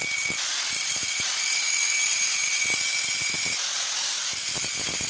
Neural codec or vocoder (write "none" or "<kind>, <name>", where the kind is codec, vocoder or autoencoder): none